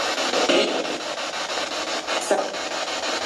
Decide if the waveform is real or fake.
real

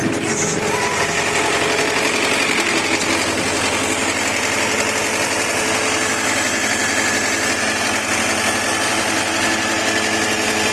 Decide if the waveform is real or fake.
real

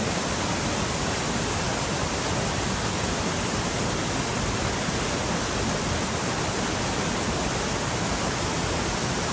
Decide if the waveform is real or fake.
real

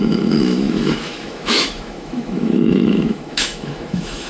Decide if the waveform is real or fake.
fake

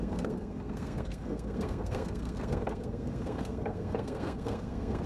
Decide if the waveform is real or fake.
fake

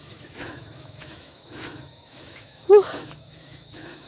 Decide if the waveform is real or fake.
fake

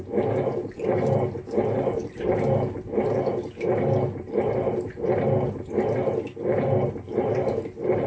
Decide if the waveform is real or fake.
fake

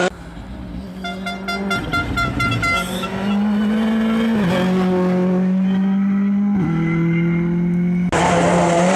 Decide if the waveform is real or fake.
real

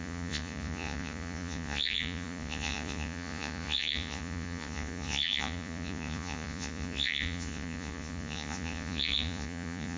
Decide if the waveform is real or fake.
fake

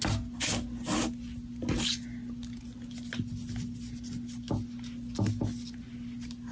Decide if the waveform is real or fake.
real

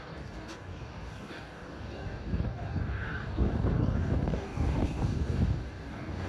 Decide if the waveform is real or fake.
fake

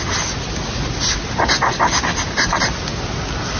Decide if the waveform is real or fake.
real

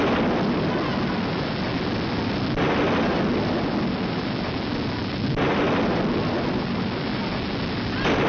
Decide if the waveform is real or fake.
real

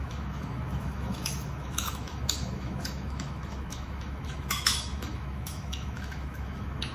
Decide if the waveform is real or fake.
fake